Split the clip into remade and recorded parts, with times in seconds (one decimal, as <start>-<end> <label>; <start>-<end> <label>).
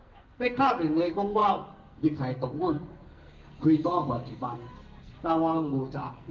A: 0.0-6.3 remade